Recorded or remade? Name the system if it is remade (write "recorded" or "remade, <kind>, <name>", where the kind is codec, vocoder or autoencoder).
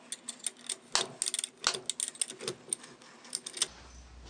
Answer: recorded